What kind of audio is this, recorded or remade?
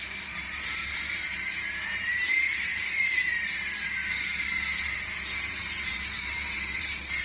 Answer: remade